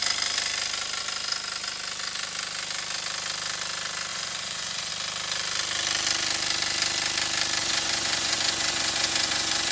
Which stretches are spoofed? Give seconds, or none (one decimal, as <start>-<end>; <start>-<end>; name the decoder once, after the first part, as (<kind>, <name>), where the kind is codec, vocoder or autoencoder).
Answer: 4.1-4.9 (vocoder, Vocos); 7.6-9.7